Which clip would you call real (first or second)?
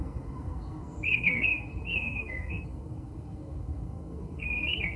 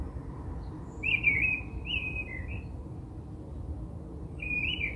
second